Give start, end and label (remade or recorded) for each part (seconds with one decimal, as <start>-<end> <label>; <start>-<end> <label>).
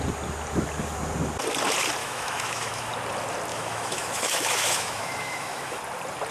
0.0-2.0 recorded; 2.0-2.9 remade; 2.9-3.5 recorded; 3.5-5.8 remade; 5.8-6.3 recorded